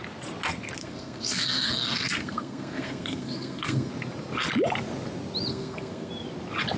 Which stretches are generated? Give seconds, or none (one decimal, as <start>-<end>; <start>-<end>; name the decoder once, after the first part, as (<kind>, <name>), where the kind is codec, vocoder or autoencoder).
0.8-3.9 (codec, SNAC); 5.5-6.1